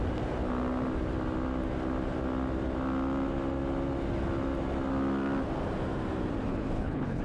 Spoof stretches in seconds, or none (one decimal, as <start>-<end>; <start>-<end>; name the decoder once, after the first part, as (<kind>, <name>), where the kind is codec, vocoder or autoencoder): 6.5-7.2 (codec, HILCodec)